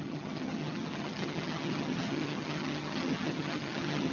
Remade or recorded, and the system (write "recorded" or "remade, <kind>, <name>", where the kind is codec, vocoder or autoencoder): remade, vocoder, HiFi-GAN